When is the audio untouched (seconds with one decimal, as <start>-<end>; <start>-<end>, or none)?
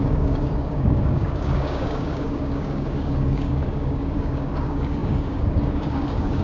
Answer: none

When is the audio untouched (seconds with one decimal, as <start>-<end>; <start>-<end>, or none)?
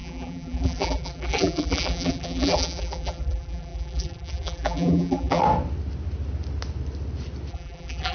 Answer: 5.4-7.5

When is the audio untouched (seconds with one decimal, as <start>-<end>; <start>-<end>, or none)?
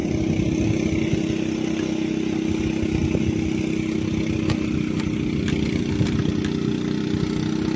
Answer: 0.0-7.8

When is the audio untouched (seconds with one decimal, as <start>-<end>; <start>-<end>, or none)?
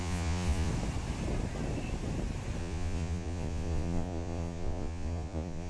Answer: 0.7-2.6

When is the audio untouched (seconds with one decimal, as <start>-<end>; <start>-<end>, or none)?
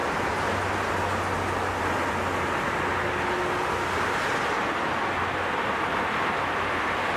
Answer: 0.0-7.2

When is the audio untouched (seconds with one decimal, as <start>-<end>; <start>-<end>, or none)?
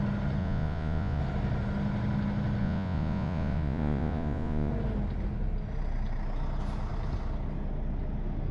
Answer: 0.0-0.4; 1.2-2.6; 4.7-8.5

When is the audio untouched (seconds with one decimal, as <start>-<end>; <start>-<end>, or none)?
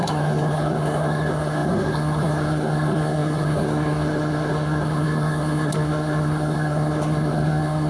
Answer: none